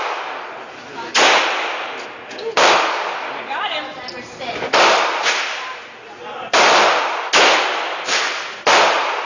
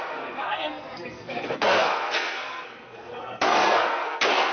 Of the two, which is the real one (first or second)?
first